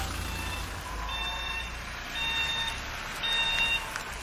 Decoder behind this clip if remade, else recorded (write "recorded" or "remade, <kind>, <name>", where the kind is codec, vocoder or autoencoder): recorded